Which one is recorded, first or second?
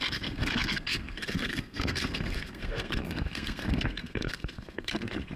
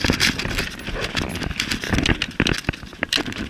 second